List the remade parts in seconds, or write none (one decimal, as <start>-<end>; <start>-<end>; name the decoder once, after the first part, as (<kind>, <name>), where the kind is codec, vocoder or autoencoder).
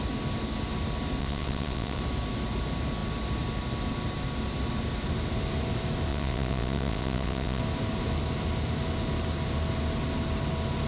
1.2-2.0 (vocoder, WaveNeXt); 6.1-7.6